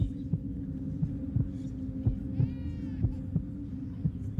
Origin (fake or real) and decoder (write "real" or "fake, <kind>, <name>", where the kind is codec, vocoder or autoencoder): real